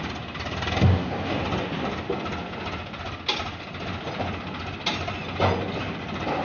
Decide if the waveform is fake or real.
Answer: real